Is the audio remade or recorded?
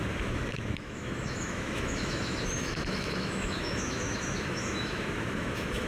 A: remade